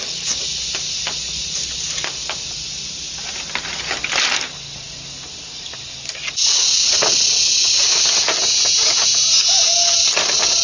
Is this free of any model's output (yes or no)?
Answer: yes